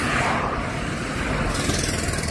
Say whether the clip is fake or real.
real